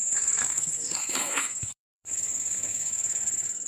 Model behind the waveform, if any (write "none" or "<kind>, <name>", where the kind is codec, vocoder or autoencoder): codec, SNAC